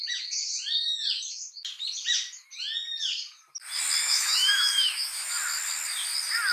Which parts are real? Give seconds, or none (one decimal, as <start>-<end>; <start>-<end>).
0.0-4.0; 5.3-6.5